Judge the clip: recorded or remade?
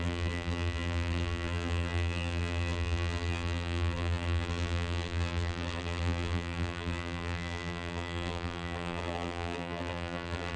remade